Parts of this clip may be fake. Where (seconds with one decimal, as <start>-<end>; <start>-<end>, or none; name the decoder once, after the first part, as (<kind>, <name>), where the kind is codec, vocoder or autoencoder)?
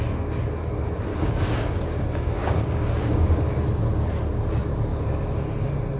1.1-3.4 (codec, DAC)